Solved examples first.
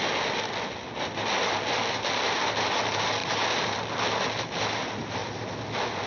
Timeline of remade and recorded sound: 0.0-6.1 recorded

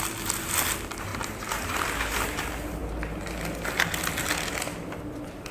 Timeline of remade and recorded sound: 0.0-5.5 recorded

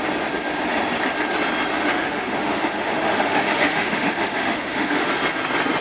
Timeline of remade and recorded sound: 0.0-1.9 recorded; 1.9-5.1 remade; 5.1-5.8 recorded

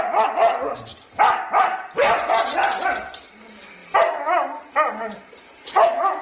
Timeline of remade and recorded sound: 0.0-6.2 recorded

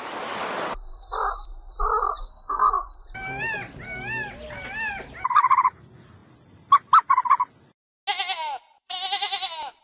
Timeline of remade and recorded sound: 0.0-2.2 recorded; 2.2-2.7 remade; 2.7-9.8 recorded

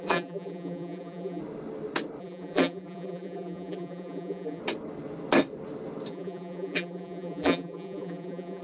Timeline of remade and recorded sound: 0.0-1.4 remade; 1.4-2.2 recorded; 2.2-4.6 remade; 4.6-6.1 recorded; 6.1-8.6 remade